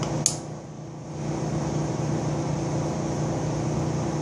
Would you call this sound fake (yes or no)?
no